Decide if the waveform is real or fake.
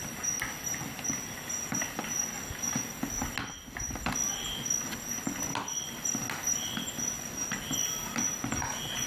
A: real